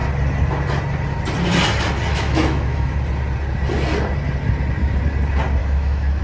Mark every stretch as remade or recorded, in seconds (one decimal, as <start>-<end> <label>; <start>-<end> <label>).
0.0-2.1 recorded; 2.1-2.9 remade; 2.9-5.6 recorded; 5.6-6.2 remade